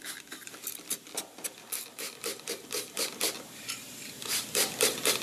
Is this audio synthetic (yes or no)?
yes